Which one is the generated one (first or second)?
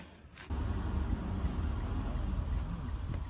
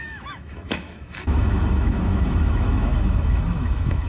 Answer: second